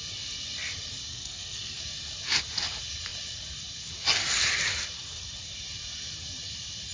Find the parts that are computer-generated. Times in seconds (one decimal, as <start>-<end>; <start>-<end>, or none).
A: 1.1-1.8